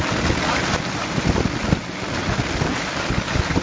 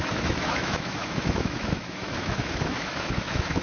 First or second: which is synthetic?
second